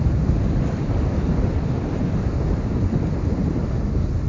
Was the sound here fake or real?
real